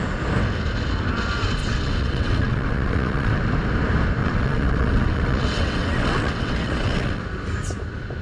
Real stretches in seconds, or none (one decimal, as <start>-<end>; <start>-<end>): 0.0-1.6; 3.4-4.2; 7.2-8.2